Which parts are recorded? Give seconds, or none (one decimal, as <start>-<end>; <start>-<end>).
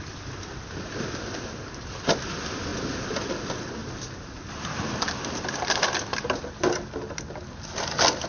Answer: 0.0-8.3